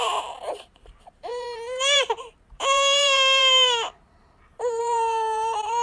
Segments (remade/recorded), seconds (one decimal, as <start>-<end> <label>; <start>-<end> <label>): 0.0-5.8 remade